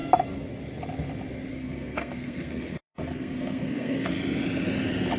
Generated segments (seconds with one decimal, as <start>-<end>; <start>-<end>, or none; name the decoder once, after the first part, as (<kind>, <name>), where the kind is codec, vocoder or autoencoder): 1.5-4.2 (codec, SNAC)